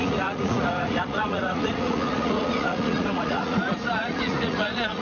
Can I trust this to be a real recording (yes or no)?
no